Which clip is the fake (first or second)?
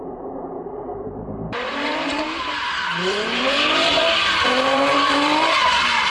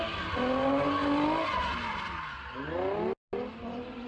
first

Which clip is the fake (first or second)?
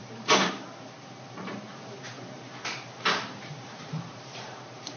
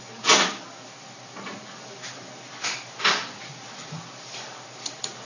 first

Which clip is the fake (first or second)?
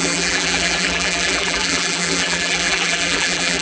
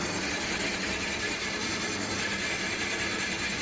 first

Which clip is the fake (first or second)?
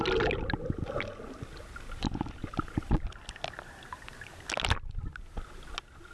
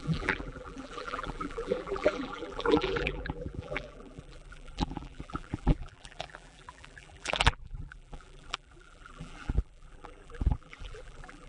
second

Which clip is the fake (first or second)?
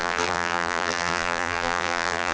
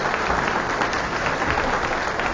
first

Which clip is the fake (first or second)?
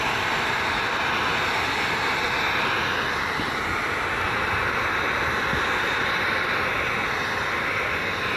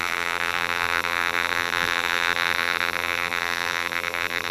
second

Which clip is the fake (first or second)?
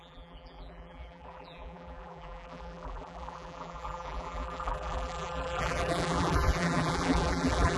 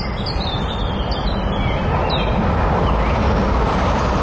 first